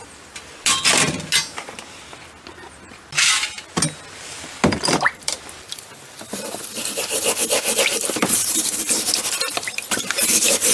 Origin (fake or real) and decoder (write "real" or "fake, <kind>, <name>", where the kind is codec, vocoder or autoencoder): real